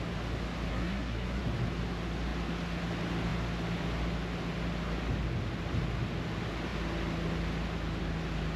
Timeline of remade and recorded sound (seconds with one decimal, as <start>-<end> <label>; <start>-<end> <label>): 0.0-0.7 recorded; 0.7-1.4 remade; 1.4-8.6 recorded